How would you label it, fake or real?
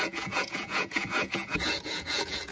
fake